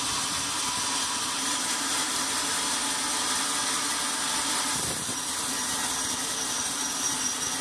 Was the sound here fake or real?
real